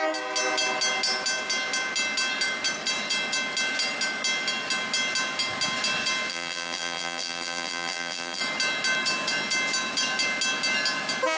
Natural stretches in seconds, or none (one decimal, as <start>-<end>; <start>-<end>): 0.0-6.3; 8.4-11.4